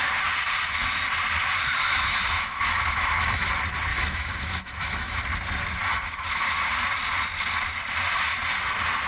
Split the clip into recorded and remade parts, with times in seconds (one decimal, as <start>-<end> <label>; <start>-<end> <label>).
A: 0.0-1.8 recorded; 1.8-3.5 remade; 3.5-3.9 recorded; 3.9-5.2 remade; 5.2-5.9 recorded; 5.9-6.4 remade; 6.4-9.1 recorded